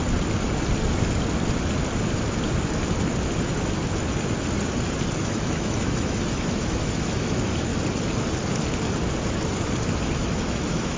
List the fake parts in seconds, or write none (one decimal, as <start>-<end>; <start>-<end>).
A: 5.2-7.7; 10.0-11.0